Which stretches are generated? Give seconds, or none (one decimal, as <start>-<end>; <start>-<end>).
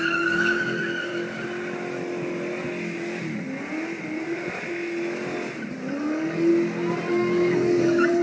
0.0-1.1; 5.9-6.5; 7.1-8.2